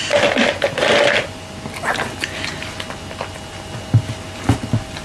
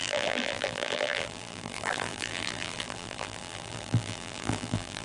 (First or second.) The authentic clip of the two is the first